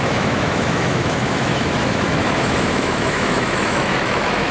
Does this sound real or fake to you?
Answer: fake